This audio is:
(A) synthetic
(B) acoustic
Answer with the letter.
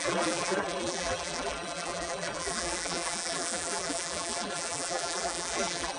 A